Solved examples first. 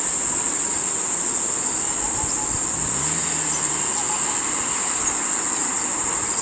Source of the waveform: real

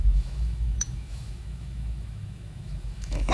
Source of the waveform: fake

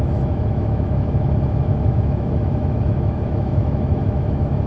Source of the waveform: fake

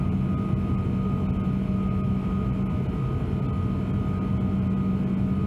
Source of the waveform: real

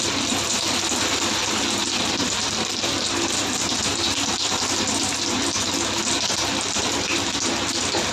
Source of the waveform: real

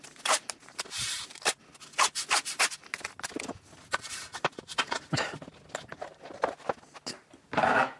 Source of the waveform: real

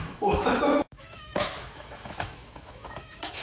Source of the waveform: fake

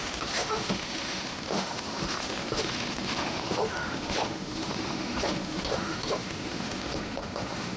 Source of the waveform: fake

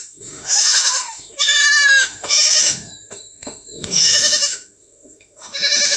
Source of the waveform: fake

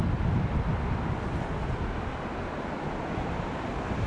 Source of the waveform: real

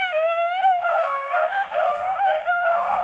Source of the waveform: fake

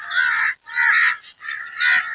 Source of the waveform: real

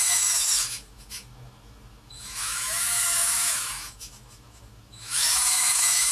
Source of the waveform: fake